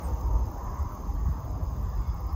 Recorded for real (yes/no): yes